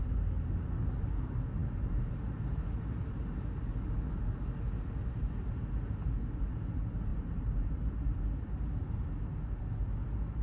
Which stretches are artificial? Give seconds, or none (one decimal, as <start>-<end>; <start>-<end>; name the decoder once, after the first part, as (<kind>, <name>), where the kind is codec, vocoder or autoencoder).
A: none